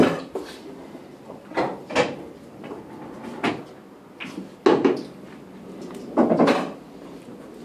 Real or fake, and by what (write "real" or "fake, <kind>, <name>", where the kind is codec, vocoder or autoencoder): real